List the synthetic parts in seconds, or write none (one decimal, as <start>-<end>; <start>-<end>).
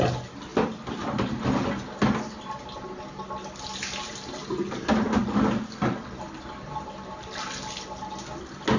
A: none